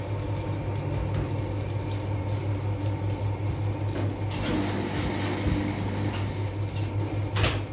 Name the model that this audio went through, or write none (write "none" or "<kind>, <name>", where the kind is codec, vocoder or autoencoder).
none